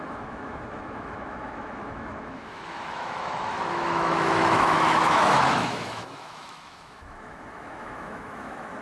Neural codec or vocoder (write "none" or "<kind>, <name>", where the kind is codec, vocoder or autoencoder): autoencoder, DAC-VAE